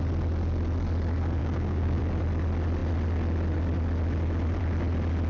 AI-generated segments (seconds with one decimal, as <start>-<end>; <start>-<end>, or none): 1.4-2.0